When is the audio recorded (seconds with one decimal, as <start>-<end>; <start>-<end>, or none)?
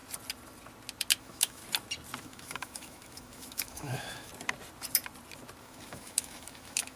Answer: 0.0-1.2; 1.6-2.2; 4.3-5.6